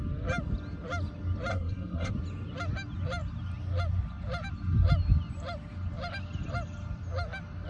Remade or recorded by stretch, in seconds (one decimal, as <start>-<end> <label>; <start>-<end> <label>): 0.0-1.5 recorded; 1.5-2.1 remade; 2.1-7.7 recorded